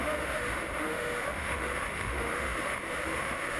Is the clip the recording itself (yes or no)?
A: no